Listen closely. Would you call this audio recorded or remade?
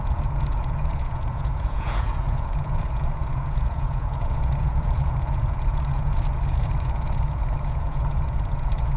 remade